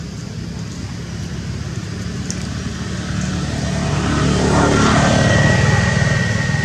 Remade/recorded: recorded